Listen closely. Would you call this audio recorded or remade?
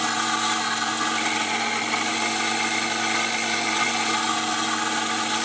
recorded